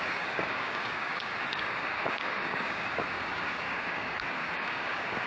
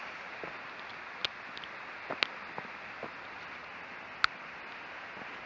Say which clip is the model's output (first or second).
first